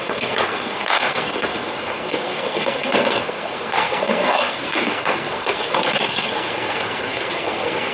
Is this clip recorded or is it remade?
remade